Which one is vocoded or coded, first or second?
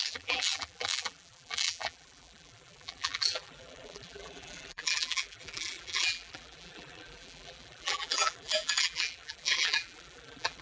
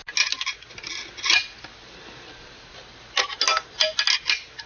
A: first